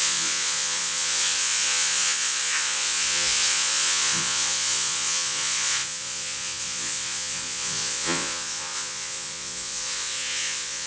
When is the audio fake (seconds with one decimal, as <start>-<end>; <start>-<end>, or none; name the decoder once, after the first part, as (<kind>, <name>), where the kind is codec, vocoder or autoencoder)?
0.0-10.9 (vocoder, Vocos)